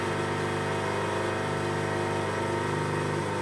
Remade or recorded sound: recorded